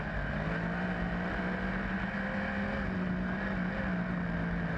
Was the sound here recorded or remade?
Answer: recorded